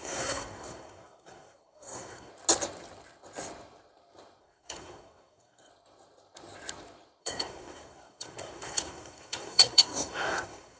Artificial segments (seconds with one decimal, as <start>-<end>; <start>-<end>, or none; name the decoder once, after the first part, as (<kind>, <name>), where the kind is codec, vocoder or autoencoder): 0.0-2.3 (codec, SNAC); 4.4-5.7; 7.2-10.8